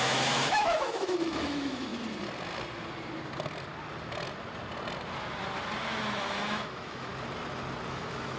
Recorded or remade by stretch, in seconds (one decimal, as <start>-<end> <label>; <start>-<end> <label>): 0.0-1.9 remade; 1.9-6.2 recorded; 6.2-7.1 remade; 7.1-7.9 recorded; 7.9-8.4 remade